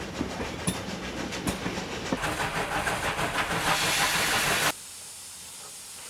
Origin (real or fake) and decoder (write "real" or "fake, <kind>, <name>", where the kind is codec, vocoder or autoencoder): real